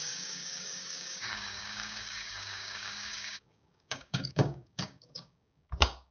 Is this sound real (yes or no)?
no